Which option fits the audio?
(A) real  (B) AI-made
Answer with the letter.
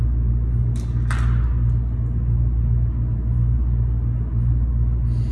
A